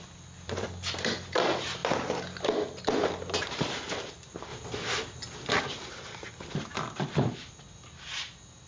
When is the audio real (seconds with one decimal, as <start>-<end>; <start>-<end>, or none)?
0.0-8.7